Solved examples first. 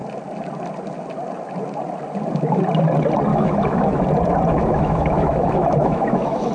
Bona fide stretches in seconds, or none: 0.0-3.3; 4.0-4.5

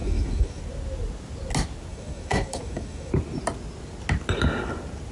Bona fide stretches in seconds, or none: 0.6-1.9; 3.1-5.1

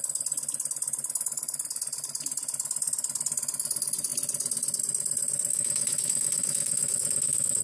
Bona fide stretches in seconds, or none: 0.0-5.5

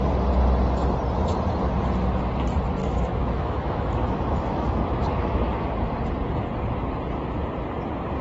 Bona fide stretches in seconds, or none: 0.0-2.8; 5.9-8.2

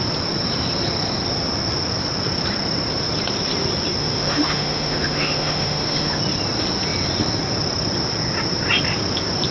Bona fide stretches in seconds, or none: 0.0-4.0; 6.2-9.5

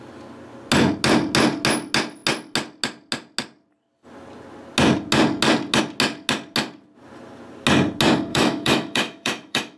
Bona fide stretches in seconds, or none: 0.0-8.3

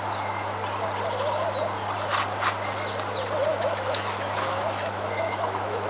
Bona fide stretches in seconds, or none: 0.0-3.5